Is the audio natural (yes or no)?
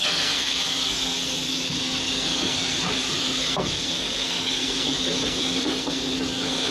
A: no